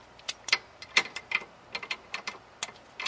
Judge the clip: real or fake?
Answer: real